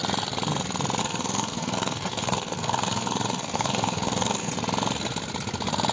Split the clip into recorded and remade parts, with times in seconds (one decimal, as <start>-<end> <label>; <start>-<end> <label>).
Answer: 0.0-1.0 recorded; 1.0-4.5 remade; 4.5-5.9 recorded